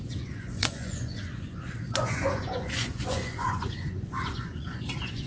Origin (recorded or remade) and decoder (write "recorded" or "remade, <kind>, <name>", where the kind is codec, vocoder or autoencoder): remade, vocoder, Vocos